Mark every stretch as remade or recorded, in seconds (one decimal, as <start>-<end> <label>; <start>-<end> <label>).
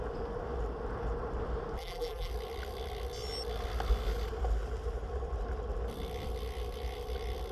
0.0-1.8 recorded; 1.8-2.3 remade; 2.3-7.5 recorded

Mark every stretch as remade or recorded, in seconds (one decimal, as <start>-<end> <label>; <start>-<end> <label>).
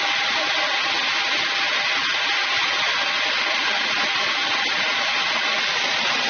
0.0-6.3 recorded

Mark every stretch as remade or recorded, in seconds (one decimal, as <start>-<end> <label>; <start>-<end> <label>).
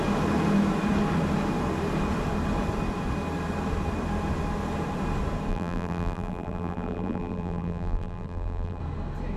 0.0-5.5 recorded; 5.5-8.8 remade; 8.8-9.4 recorded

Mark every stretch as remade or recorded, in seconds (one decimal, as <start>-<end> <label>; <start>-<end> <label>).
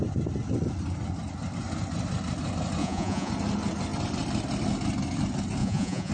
0.0-2.8 recorded; 2.8-3.3 remade; 3.3-5.6 recorded; 5.6-6.1 remade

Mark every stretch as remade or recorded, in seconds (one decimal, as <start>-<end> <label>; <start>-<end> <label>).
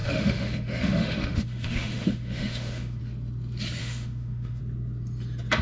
0.0-3.0 remade; 3.0-3.8 recorded; 3.8-4.6 remade; 4.6-5.6 recorded